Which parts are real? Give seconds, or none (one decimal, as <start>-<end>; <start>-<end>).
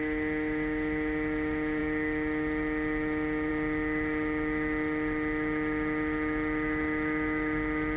none